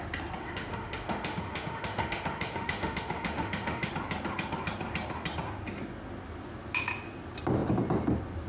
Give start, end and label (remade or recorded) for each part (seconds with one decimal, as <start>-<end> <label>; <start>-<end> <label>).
0.0-0.4 recorded; 0.4-3.9 remade; 3.9-8.5 recorded